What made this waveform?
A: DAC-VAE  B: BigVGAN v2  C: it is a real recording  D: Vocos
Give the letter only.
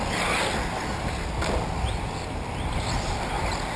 C